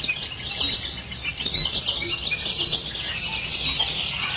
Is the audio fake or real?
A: real